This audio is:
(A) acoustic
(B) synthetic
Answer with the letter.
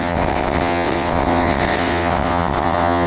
B